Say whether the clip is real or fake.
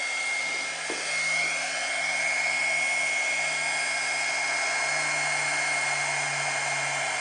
real